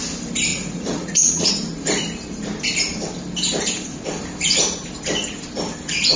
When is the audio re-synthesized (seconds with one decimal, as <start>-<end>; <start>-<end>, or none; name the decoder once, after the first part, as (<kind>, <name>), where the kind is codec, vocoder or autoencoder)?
0.5-1.5 (vocoder, Vocos)